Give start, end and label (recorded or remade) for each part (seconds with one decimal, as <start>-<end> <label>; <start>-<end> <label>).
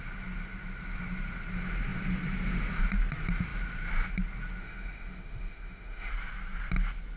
0.0-4.6 recorded; 4.6-6.1 remade; 6.1-7.2 recorded